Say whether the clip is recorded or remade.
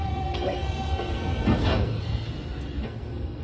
remade